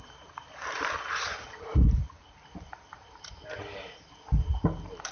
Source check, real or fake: real